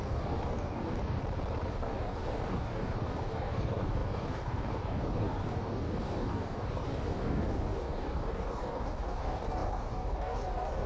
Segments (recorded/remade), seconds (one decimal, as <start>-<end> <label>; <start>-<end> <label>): 0.0-1.2 remade; 1.2-1.7 recorded; 1.7-10.9 remade